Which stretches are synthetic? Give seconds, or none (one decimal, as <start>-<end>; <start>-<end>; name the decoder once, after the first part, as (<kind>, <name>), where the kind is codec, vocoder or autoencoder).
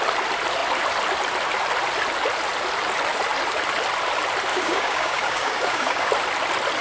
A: 4.5-6.1 (codec, DAC)